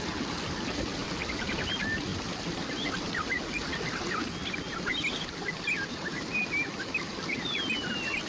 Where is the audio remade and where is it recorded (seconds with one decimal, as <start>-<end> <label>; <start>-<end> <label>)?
0.0-2.1 remade; 2.1-3.2 recorded; 3.2-3.6 remade; 3.6-6.7 recorded; 6.7-8.3 remade